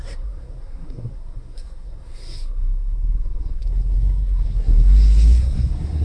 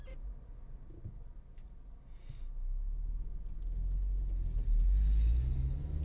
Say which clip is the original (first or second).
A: second